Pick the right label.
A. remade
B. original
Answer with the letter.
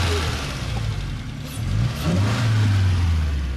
B